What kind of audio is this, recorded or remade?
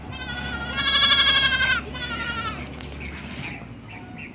recorded